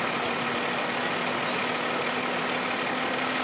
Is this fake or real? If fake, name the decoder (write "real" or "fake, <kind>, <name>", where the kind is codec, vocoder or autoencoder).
real